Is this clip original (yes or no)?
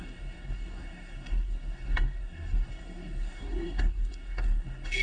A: no